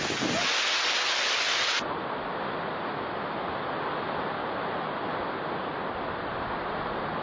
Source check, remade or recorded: recorded